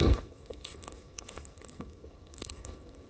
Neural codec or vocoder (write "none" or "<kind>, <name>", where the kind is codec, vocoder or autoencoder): codec, SNAC